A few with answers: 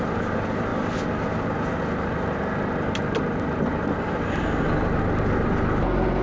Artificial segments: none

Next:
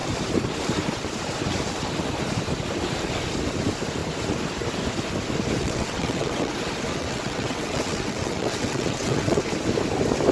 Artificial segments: 5.6-6.5 (vocoder, WaveNeXt); 6.9-9.4

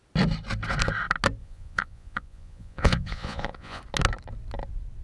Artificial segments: 1.4-3.8 (vocoder, Vocos)

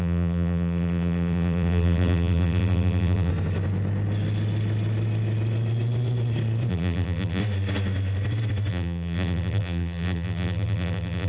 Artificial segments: 0.0-3.3 (vocoder, BigVGAN v2); 6.7-7.4; 8.7-11.3

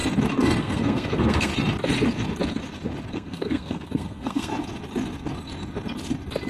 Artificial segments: 0.6-1.5 (codec, SNAC); 3.1-4.5

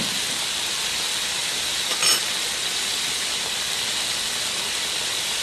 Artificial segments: none

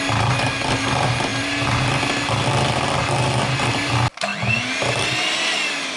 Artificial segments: none